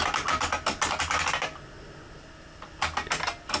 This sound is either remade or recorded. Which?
recorded